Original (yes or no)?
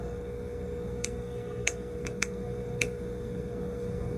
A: no